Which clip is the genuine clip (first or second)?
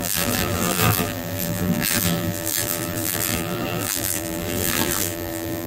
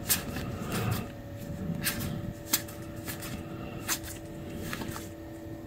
second